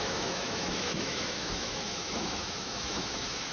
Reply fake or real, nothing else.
fake